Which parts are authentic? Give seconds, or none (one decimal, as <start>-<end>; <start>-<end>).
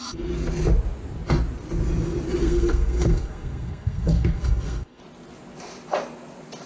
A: 0.0-2.4; 5.0-6.7